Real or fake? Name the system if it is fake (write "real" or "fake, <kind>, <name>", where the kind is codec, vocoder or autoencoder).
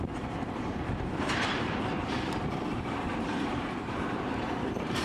fake, vocoder, BigVGAN v2